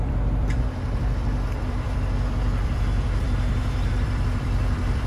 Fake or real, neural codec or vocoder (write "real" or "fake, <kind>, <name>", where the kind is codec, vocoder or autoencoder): fake, vocoder, BigVGAN v2